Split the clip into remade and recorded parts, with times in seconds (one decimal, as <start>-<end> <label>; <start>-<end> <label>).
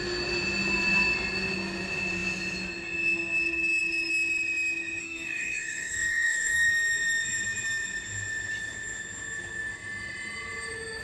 0.0-5.0 recorded; 5.0-6.7 remade; 6.7-11.0 recorded